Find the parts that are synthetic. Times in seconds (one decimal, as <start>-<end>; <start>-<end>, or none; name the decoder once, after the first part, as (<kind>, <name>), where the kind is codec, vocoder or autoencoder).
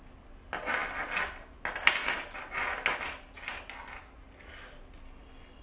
none